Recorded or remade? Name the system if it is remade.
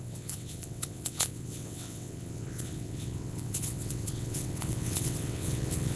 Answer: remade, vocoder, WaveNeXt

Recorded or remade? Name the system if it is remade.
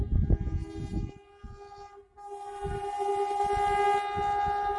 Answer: recorded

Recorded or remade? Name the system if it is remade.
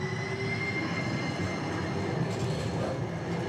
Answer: recorded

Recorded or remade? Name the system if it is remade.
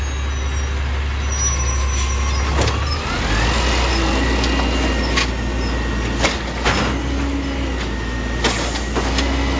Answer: recorded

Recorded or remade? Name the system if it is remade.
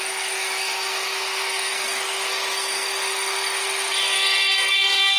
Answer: remade, codec, SNAC